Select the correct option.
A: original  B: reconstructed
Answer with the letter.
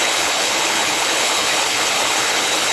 B